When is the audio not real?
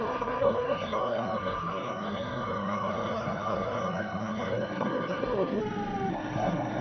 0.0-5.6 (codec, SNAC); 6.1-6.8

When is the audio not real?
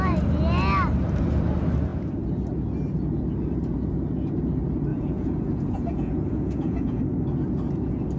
4.9-7.0 (vocoder, Vocos)